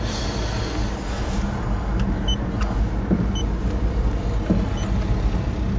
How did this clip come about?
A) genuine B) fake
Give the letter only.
A